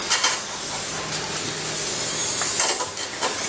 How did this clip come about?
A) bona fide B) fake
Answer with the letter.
A